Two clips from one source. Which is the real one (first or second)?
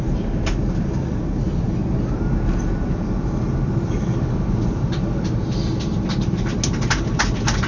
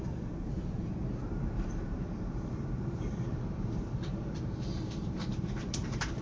first